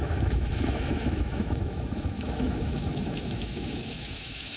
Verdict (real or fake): fake